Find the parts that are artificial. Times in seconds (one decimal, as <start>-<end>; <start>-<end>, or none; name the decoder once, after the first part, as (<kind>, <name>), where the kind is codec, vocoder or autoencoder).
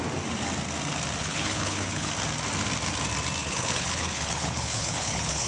1.2-2.1 (codec, HILCodec); 3.4-5.5